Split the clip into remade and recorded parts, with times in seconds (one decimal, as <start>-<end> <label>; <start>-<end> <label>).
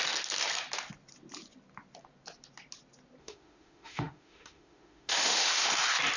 0.0-3.2 recorded; 3.2-5.7 remade; 5.7-6.2 recorded